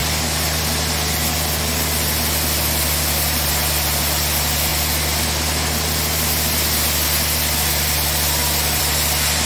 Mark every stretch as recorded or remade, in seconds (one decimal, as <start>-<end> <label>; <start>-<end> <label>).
0.0-9.5 recorded